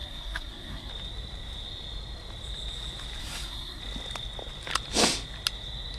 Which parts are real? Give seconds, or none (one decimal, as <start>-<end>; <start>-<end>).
0.9-3.2; 3.8-6.0